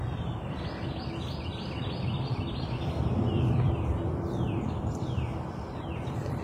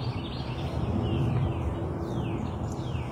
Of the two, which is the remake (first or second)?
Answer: first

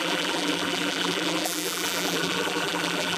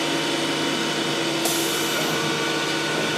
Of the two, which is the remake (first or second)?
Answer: first